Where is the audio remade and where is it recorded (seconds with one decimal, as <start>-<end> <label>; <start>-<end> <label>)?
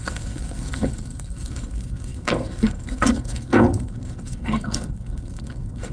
0.0-5.9 remade